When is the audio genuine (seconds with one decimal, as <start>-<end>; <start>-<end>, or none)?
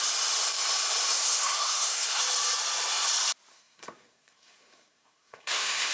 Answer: 0.0-1.1; 2.2-3.5